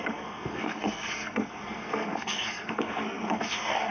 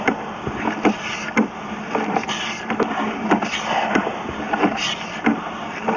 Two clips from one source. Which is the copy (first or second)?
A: first